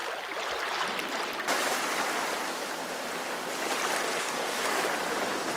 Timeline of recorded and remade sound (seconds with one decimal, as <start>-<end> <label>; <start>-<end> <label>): 0.0-4.2 recorded; 4.2-4.8 remade; 4.8-5.6 recorded

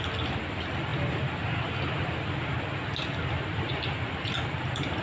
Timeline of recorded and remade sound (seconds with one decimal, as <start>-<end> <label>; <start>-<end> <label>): 0.0-5.0 recorded

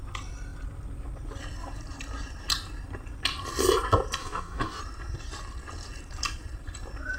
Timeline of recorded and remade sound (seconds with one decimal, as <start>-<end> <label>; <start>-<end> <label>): 0.0-4.2 recorded; 4.2-4.8 remade; 4.8-7.2 recorded